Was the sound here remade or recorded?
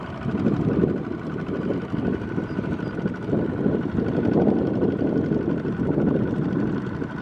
recorded